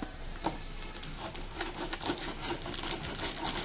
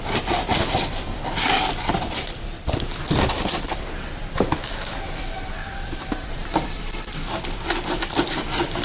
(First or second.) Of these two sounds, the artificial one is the second